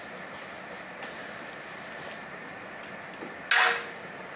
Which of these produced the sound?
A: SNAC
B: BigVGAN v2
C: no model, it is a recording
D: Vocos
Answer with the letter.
C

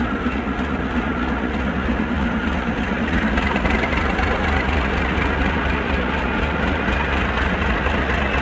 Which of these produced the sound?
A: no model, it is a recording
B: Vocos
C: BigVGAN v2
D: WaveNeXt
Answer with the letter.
B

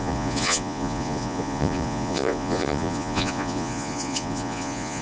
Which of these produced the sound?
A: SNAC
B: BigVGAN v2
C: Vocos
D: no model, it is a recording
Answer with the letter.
C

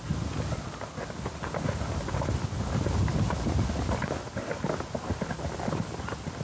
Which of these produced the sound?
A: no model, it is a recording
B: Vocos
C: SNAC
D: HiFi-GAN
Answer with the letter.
A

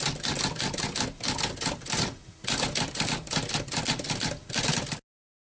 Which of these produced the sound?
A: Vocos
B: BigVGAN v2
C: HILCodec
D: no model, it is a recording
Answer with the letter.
D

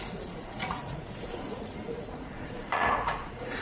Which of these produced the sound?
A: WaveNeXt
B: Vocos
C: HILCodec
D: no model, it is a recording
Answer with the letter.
B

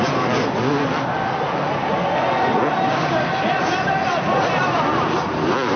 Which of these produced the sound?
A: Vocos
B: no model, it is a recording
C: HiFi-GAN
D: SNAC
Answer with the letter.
B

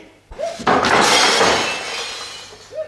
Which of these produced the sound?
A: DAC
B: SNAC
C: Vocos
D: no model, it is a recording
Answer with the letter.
D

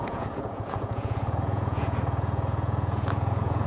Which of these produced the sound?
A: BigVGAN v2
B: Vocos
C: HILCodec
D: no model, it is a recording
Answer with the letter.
B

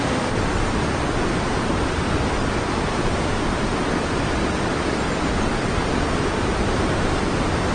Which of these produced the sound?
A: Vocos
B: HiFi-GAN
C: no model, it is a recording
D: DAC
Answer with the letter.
C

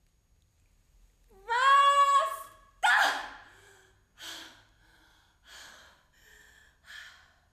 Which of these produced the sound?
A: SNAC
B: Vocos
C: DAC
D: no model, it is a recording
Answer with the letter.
D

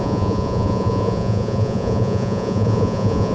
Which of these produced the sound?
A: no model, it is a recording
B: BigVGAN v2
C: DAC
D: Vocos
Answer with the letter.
D